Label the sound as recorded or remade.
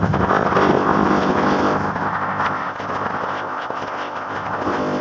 remade